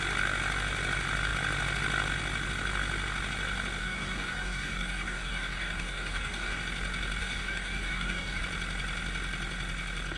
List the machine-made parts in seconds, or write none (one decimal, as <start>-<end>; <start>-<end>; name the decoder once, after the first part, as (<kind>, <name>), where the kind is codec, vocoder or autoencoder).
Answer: 3.8-6.6 (codec, DAC); 7.2-8.4